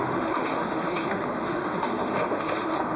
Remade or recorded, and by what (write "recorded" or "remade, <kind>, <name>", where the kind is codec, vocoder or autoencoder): remade, autoencoder, DAC-VAE